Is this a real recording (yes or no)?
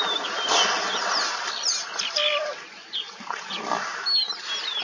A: yes